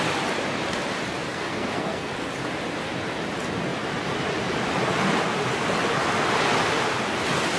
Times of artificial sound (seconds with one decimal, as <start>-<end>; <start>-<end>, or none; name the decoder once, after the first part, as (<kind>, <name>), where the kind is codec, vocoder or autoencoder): 1.3-2.1 (codec, SNAC)